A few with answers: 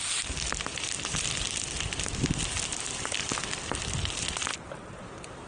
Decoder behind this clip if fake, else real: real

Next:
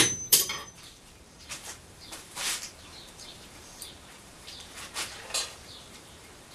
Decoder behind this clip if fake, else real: fake, vocoder, BigVGAN v2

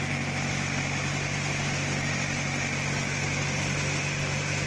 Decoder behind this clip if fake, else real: real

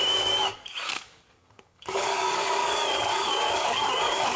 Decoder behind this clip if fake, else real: fake, codec, DAC